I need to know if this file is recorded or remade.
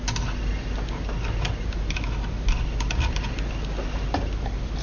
recorded